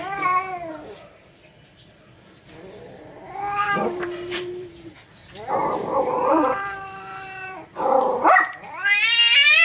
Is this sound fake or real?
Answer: fake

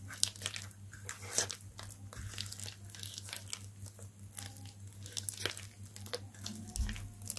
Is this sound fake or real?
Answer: real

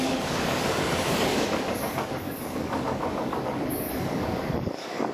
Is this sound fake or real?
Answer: fake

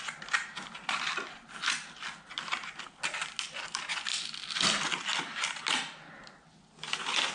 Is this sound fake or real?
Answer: real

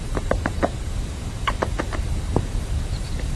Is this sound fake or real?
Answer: fake